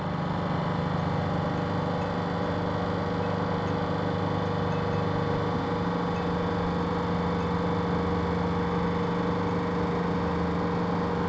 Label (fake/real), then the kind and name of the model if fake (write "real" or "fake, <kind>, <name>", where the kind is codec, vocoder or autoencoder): real